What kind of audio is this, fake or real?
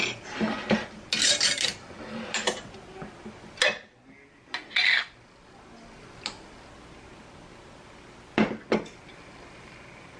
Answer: real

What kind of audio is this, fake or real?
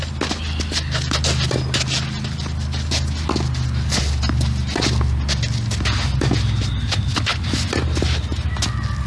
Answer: real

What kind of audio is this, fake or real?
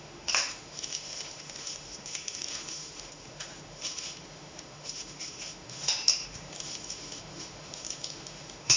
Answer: fake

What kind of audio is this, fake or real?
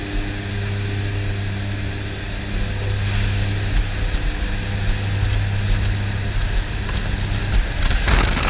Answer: real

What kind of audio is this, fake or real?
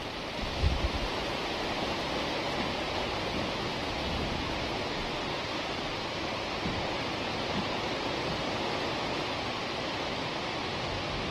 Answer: real